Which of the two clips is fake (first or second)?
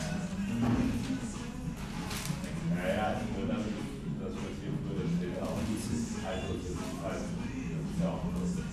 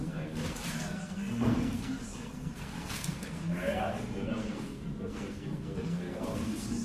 second